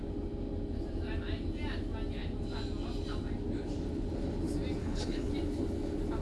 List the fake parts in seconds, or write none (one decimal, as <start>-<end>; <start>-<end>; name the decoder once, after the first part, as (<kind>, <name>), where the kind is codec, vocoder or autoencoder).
4.8-5.3 (codec, HILCodec)